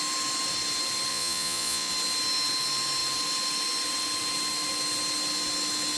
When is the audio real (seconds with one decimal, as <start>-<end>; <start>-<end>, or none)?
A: 0.0-1.1; 1.9-6.0